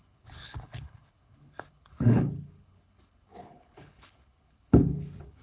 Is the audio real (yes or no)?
no